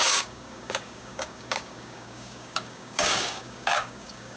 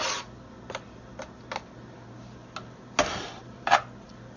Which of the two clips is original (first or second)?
second